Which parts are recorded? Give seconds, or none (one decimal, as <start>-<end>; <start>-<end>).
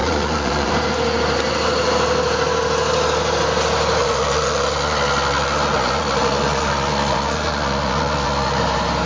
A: 0.7-4.0; 8.6-9.1